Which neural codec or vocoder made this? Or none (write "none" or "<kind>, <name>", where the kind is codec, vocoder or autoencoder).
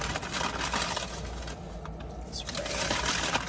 none